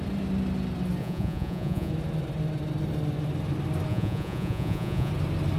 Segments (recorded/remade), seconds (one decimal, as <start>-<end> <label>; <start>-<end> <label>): 0.0-1.0 recorded; 1.0-1.9 remade; 1.9-3.9 recorded; 3.9-5.1 remade; 5.1-5.6 recorded